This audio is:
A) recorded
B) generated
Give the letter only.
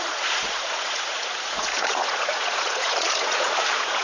B